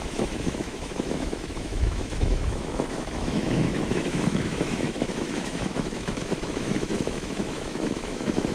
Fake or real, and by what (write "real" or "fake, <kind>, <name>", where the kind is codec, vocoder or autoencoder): fake, autoencoder, DAC-VAE